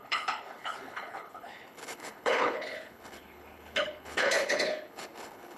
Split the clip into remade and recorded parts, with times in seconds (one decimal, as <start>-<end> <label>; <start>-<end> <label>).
0.0-5.6 remade